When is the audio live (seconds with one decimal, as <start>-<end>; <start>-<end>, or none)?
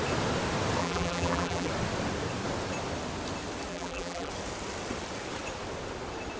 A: 0.0-0.8; 1.7-3.7; 4.3-6.4